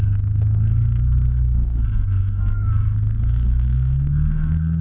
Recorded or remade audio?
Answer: remade